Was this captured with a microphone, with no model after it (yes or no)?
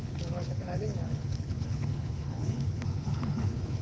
no